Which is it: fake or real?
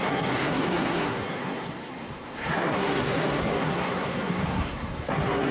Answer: fake